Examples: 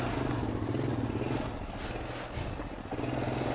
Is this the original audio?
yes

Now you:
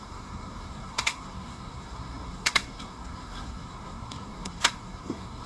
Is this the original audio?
no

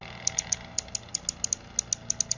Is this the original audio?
yes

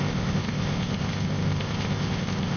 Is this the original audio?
no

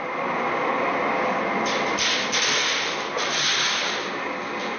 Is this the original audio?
yes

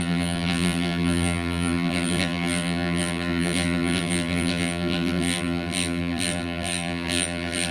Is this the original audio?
no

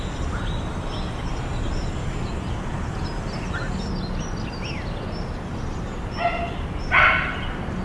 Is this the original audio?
yes